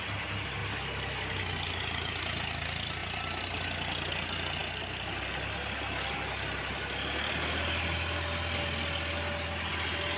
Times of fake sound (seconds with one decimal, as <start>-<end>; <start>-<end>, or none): 3.0-3.6